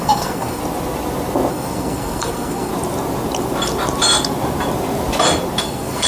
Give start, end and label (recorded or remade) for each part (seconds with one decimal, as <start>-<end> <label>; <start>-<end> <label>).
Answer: 0.0-0.6 remade; 0.6-1.5 recorded; 1.5-2.7 remade; 2.7-5.6 recorded; 5.6-6.1 remade